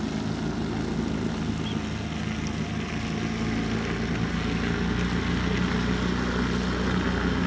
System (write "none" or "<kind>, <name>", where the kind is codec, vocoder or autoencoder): none